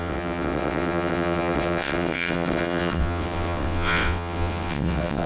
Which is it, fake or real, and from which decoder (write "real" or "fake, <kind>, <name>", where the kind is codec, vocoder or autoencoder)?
fake, vocoder, WaveNeXt